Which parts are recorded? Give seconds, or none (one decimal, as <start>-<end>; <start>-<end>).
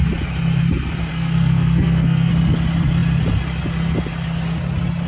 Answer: 0.0-1.1; 2.3-5.1